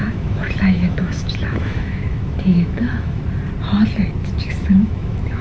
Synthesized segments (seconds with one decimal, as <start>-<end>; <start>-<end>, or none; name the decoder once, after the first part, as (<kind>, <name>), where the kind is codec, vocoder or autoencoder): 0.0-3.2 (autoencoder, DAC-VAE); 4.2-5.4